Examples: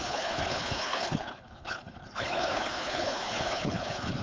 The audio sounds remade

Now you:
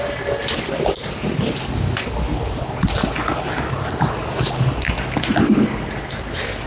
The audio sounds recorded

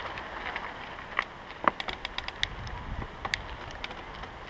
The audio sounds recorded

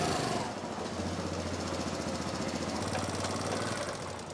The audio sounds recorded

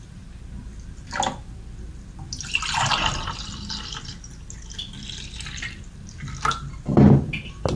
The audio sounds recorded